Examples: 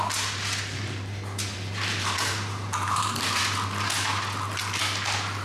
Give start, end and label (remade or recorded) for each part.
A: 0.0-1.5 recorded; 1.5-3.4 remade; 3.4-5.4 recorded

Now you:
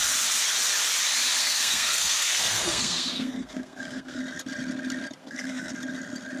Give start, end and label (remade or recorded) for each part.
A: 0.0-1.4 recorded; 1.4-4.2 remade; 4.2-5.2 recorded; 5.2-5.7 remade; 5.7-6.4 recorded